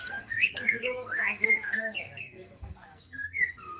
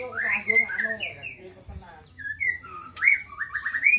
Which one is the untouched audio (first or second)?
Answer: second